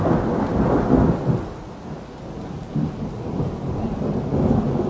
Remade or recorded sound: recorded